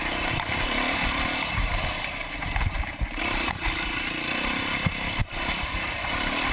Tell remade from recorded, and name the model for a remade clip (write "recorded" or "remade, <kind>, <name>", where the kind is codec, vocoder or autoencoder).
remade, vocoder, BigVGAN v2